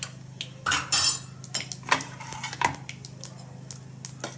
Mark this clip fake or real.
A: real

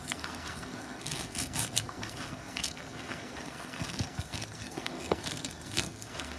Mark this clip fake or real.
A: fake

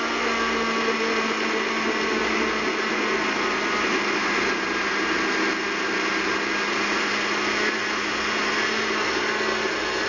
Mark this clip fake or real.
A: real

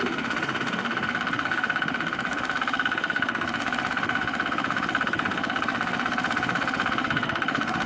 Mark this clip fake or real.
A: fake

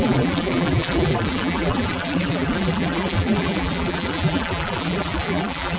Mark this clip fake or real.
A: fake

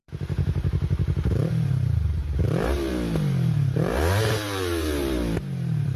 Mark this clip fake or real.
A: fake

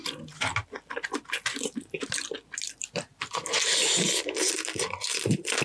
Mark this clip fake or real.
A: real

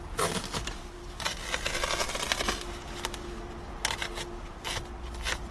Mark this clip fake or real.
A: real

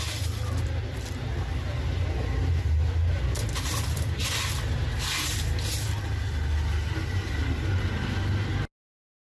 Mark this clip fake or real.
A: real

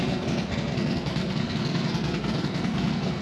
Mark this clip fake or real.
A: fake